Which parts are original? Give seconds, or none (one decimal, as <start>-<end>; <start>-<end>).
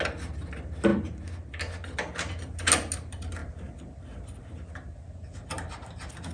0.0-6.3